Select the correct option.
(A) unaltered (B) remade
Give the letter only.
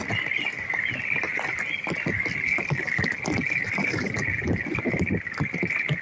A